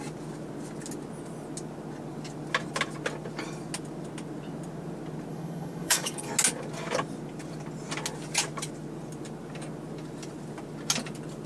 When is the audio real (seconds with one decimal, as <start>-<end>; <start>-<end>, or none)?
0.0-5.3; 6.3-11.5